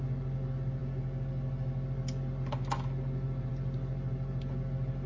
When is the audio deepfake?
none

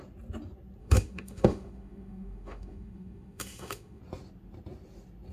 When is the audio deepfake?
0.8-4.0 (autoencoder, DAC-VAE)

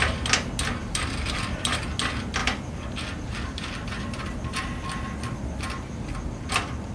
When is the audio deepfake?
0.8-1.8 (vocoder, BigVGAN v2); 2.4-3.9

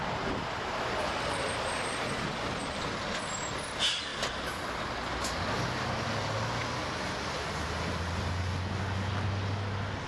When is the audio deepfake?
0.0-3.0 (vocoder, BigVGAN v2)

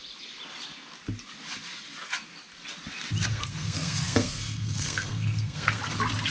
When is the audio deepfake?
3.3-5.8 (codec, SNAC)